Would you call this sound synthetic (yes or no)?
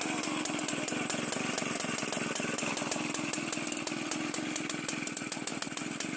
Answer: no